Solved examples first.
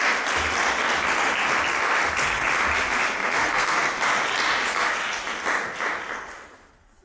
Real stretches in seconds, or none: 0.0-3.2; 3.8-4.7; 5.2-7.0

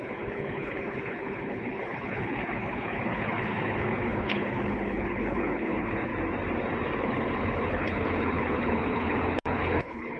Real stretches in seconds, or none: 6.1-7.0

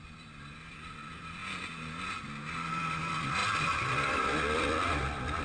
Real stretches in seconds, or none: 1.4-2.7

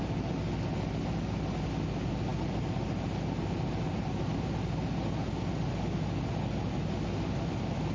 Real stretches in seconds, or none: 0.0-7.9

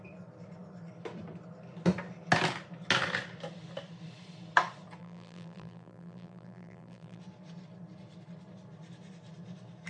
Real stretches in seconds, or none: 0.0-5.0; 7.2-9.9

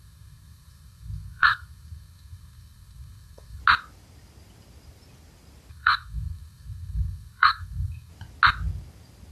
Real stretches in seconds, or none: 3.6-5.7; 8.1-9.3